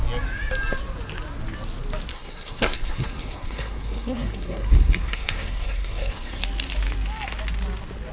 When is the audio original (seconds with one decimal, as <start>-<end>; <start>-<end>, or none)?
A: 0.0-2.1; 6.4-8.1